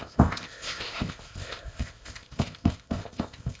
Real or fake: fake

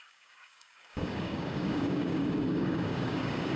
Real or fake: fake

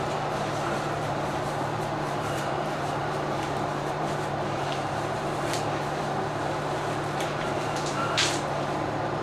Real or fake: fake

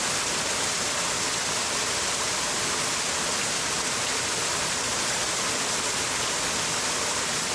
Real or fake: real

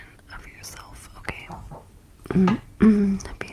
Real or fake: real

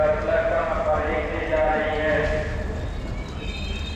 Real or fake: real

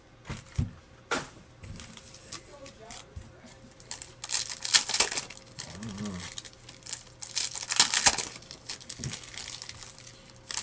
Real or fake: real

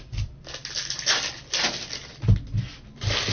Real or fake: real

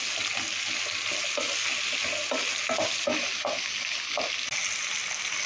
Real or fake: real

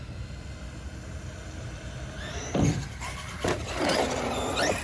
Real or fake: real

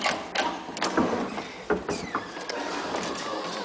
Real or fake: fake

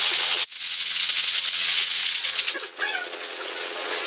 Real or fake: fake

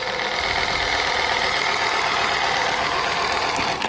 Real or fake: real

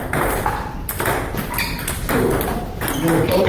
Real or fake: fake